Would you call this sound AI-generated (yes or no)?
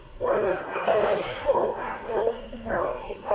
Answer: yes